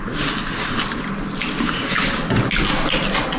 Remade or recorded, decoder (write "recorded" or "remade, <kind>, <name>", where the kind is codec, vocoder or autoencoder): recorded